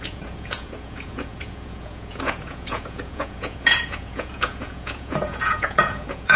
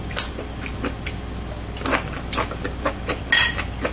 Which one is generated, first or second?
first